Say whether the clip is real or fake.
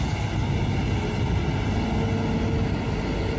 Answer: real